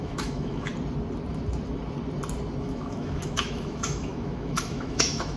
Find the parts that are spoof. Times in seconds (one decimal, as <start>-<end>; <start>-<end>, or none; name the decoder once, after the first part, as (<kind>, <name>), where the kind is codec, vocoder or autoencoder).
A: 0.0-0.7 (autoencoder, DAC-VAE); 2.6-5.4